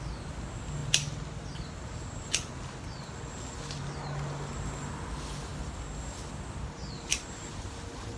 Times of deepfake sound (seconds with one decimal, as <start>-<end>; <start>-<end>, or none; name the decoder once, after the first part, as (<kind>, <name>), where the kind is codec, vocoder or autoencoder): none